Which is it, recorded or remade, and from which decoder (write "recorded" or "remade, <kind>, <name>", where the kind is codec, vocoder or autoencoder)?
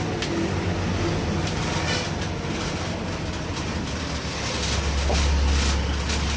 recorded